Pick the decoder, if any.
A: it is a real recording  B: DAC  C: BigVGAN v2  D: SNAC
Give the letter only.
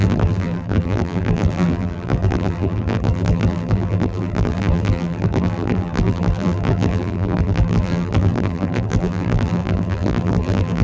C